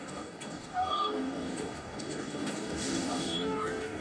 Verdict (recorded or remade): remade